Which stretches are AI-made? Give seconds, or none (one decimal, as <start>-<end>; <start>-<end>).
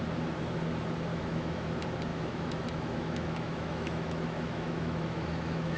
1.1-1.7; 2.1-5.8